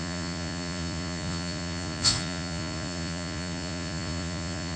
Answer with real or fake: fake